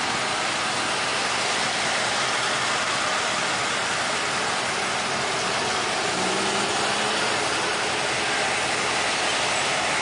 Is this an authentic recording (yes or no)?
yes